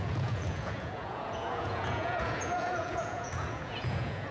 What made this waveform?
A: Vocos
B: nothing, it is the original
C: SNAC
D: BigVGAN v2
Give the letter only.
A